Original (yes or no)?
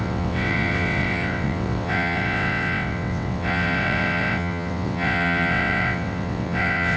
no